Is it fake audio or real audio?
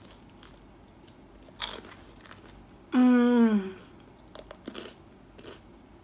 real